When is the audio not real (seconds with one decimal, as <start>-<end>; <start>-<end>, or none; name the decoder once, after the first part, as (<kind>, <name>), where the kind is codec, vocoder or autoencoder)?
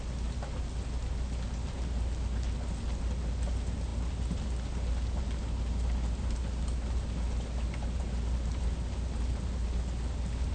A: none